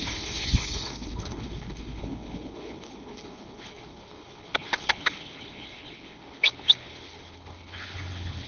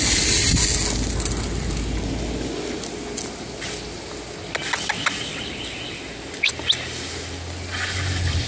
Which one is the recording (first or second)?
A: second